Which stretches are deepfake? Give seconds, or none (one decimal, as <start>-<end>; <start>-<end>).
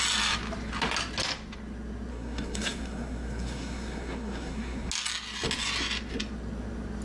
2.1-4.9